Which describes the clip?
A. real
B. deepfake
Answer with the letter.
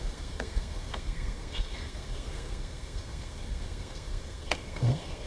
B